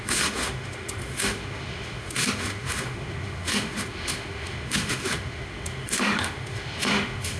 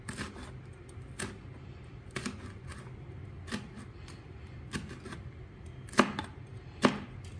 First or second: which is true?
second